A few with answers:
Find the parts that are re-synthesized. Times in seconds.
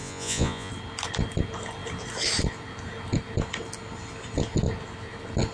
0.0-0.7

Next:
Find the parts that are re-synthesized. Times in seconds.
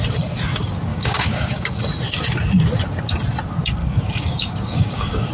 0.9-1.8; 3.8-5.3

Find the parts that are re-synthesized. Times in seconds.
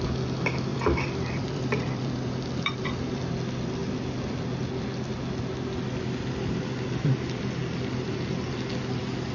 0.7-3.2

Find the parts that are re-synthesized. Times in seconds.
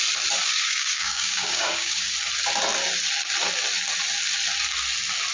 0.4-2.1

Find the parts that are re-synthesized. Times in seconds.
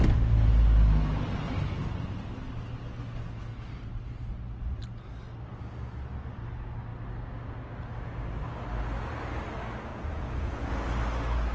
9.9-10.7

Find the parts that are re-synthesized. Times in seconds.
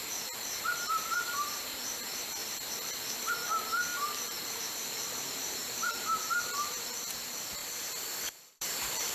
0.0-2.4; 3.3-7.6; 8.5-9.1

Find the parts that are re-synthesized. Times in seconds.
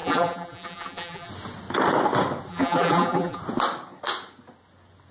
0.0-1.3; 2.5-3.4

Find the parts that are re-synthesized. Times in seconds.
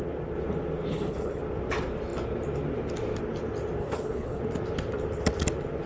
0.9-1.4; 3.8-4.4